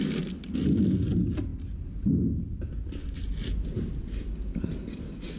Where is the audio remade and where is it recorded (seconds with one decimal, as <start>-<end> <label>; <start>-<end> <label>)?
0.0-5.4 recorded